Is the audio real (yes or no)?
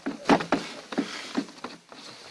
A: yes